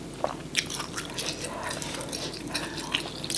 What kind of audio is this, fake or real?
real